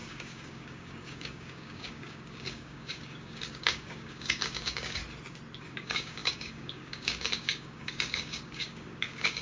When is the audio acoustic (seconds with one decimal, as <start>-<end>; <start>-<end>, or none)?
5.0-5.6

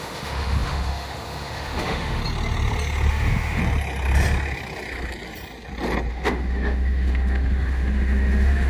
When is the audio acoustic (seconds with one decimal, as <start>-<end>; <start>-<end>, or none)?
2.2-3.1; 3.6-6.1

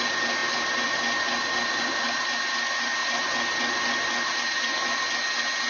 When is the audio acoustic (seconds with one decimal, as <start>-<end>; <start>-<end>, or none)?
0.0-5.7

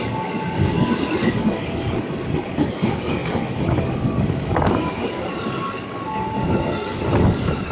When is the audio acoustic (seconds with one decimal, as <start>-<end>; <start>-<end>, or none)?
none

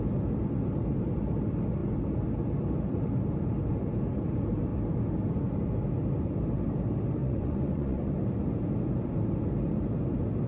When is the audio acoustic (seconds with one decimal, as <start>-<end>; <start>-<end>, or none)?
0.0-7.2; 8.2-10.5

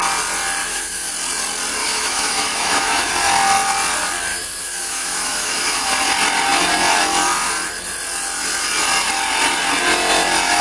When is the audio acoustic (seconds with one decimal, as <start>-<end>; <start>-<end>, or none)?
0.0-0.6; 1.1-1.8; 3.1-4.3; 5.9-10.6

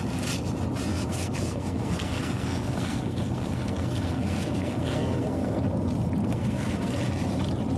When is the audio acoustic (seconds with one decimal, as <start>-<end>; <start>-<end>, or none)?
0.0-0.9; 5.6-6.2; 7.0-7.8

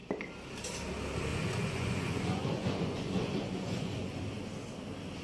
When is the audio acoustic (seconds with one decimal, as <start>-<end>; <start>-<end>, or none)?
0.0-1.3; 4.2-5.2